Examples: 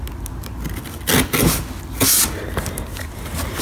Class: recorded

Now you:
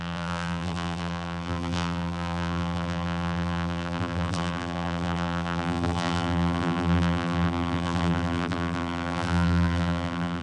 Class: remade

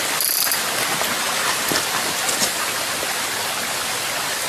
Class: recorded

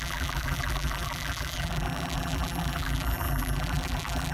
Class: remade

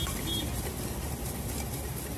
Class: recorded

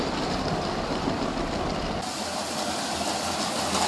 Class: recorded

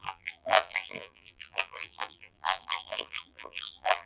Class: remade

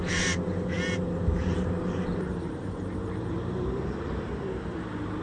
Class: remade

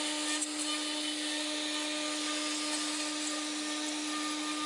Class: recorded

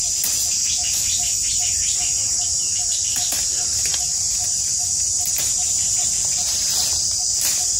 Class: recorded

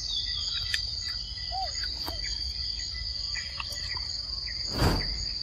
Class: recorded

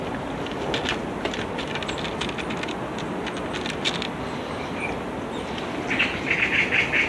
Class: recorded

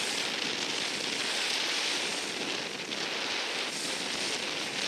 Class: recorded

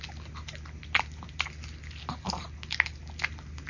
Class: recorded